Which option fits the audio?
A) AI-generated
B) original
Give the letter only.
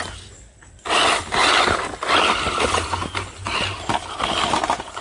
B